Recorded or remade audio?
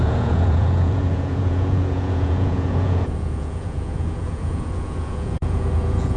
remade